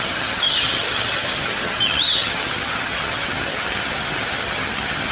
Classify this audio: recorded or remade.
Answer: remade